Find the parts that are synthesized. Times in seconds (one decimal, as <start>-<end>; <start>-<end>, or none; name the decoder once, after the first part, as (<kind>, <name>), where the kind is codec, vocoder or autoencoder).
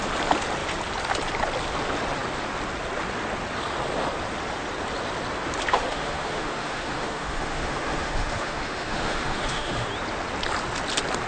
5.7-9.9 (autoencoder, DAC-VAE)